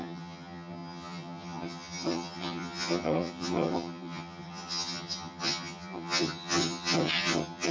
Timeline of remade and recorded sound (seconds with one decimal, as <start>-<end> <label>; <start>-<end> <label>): 0.0-7.7 remade